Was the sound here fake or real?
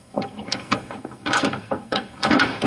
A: fake